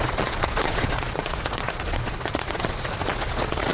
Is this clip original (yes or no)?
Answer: no